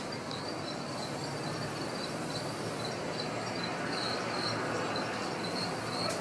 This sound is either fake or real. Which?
real